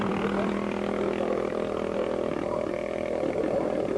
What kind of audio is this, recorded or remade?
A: remade